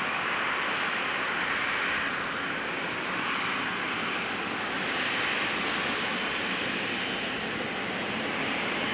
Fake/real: real